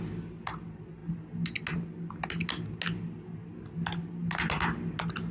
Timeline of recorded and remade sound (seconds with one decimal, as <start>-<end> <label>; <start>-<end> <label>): 0.0-5.3 recorded